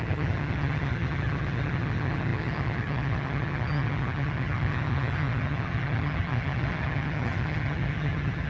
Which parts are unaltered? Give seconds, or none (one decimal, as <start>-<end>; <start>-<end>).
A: none